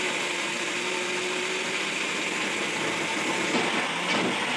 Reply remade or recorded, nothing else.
recorded